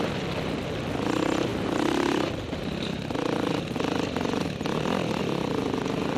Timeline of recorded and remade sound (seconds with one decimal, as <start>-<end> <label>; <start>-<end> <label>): 0.0-1.5 recorded; 1.5-5.2 remade; 5.2-6.2 recorded